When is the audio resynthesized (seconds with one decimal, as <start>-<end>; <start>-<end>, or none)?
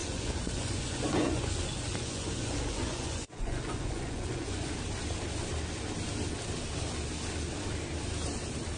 0.0-4.7